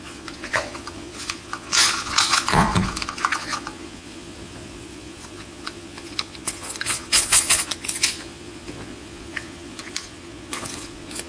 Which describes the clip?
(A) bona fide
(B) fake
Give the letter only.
B